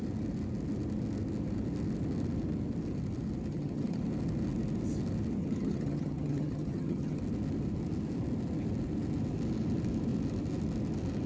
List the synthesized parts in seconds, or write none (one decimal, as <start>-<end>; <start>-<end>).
3.5-4.0; 5.4-7.2